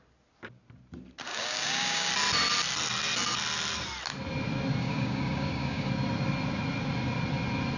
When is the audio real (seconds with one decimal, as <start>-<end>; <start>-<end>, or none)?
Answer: 0.0-1.3; 2.1-4.8; 5.9-7.8